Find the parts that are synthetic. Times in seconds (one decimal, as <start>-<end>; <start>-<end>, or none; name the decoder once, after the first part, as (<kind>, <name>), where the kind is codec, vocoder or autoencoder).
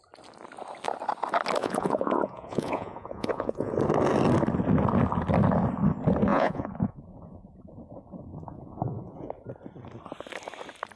1.6-3.7 (vocoder, Vocos); 6.3-7.7; 8.3-9.3